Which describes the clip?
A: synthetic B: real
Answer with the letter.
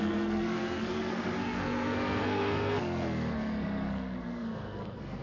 A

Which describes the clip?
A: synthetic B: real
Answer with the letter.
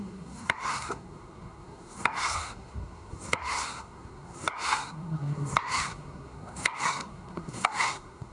A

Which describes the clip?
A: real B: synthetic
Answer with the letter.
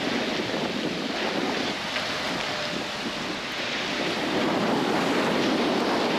A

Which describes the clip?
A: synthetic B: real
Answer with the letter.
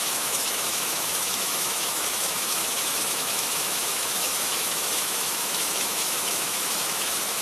A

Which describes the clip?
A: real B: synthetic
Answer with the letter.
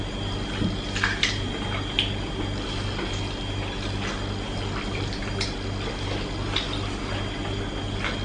A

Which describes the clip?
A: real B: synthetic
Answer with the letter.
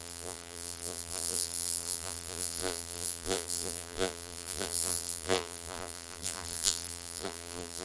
B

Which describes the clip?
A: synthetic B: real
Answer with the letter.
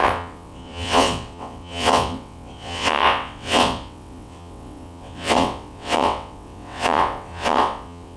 A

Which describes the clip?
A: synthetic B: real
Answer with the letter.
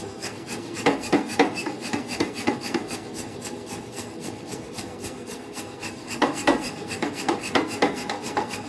A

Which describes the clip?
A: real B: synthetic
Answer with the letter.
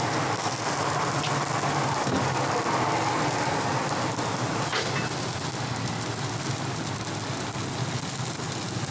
A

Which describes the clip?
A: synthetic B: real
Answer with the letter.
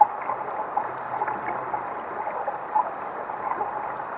B